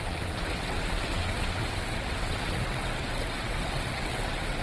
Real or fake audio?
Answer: fake